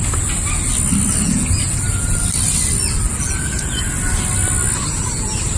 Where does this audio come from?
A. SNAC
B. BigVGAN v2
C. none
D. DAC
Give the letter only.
C